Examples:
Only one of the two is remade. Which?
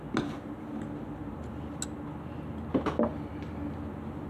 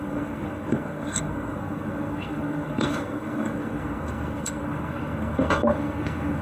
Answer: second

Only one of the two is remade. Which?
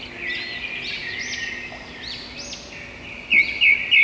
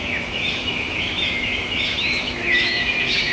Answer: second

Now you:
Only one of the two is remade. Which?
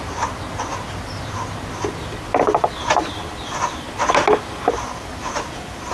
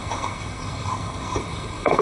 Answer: second